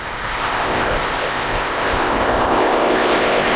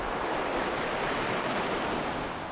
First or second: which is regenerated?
first